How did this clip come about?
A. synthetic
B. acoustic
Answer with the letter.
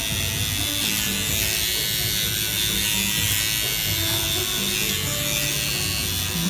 B